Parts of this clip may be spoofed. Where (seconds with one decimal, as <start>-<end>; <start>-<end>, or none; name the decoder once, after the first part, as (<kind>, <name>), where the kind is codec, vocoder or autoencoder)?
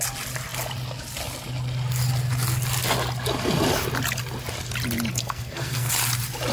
5.1-5.9 (codec, SNAC)